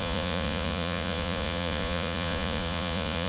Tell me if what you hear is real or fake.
fake